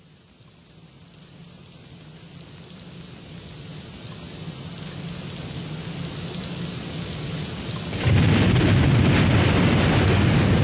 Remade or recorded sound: recorded